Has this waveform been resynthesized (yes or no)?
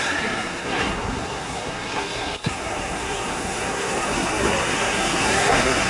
yes